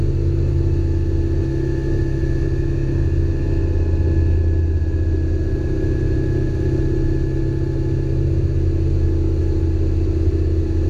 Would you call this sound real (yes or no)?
yes